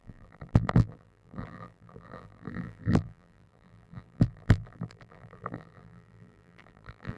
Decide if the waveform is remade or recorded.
remade